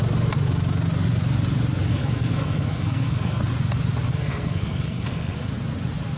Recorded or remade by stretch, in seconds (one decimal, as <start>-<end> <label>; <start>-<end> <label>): 0.0-1.9 recorded; 1.9-3.4 remade; 3.4-4.1 recorded; 4.1-5.5 remade; 5.5-6.2 recorded